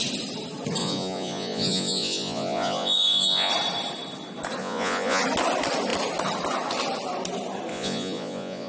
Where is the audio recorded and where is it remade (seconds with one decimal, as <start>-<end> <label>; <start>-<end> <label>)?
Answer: 0.0-0.8 recorded; 0.8-3.5 remade; 3.5-4.6 recorded; 4.6-5.2 remade; 5.2-7.7 recorded; 7.7-8.7 remade